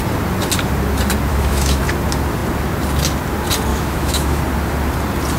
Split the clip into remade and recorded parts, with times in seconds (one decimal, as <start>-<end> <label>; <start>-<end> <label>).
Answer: 0.0-1.3 recorded; 1.3-1.8 remade; 1.8-3.7 recorded; 3.7-4.4 remade; 4.4-5.4 recorded